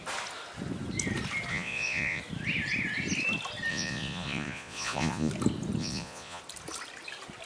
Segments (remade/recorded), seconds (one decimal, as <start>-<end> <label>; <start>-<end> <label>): 0.0-1.5 recorded; 1.5-2.2 remade; 2.2-3.7 recorded; 3.7-5.3 remade; 5.3-5.8 recorded; 5.8-6.4 remade; 6.4-7.5 recorded